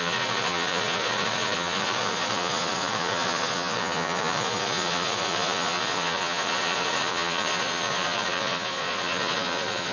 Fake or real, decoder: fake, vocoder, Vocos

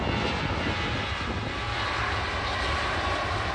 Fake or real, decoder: real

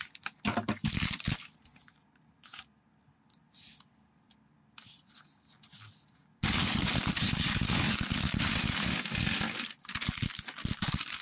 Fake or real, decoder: real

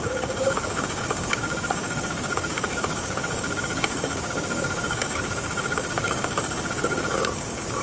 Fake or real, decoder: fake, codec, DAC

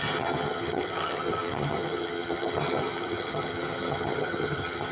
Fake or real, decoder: fake, vocoder, HiFi-GAN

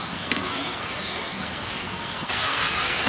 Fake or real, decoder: fake, codec, SNAC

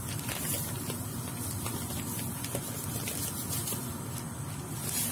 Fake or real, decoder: real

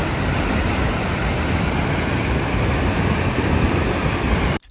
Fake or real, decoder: fake, vocoder, BigVGAN v2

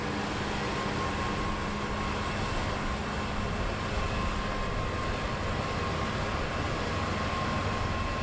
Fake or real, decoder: real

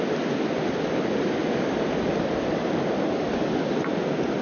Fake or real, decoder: real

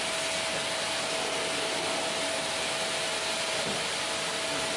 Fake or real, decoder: real